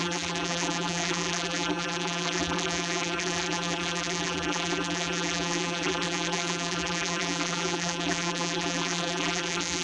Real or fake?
fake